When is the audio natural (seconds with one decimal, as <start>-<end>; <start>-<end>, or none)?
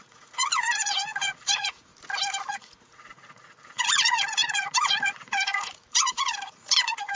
1.9-2.5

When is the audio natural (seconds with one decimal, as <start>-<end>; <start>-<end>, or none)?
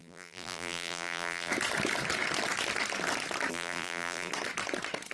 1.5-3.5; 4.3-5.1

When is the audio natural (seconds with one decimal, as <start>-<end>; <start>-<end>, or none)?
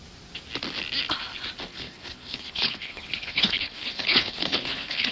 0.0-1.7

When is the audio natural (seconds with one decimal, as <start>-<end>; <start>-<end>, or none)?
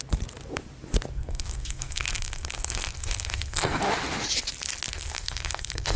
0.0-1.1; 3.8-4.9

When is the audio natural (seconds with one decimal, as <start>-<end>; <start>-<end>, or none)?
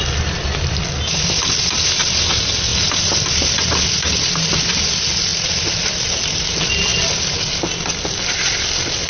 0.0-9.1